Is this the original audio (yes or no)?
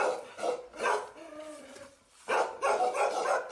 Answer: yes